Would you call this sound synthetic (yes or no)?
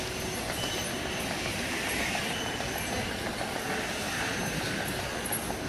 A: no